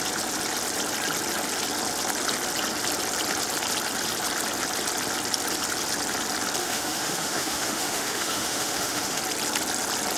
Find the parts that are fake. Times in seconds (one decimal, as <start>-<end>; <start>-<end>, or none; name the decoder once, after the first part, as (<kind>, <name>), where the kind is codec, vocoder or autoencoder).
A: 6.6-9.2 (autoencoder, DAC-VAE)